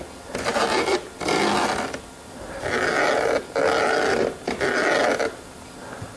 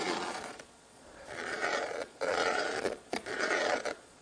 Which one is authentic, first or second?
first